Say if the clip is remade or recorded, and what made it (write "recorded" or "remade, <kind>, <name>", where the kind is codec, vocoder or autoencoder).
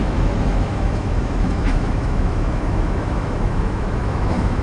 remade, autoencoder, DAC-VAE